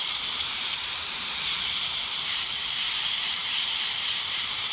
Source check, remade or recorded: remade